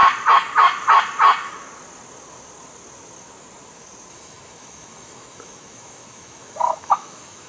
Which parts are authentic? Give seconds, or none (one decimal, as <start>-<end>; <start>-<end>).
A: 0.0-4.1